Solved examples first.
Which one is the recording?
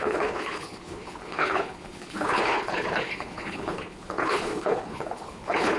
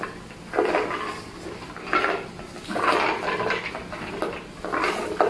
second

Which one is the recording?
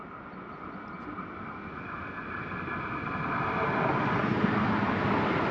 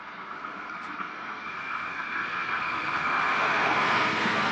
first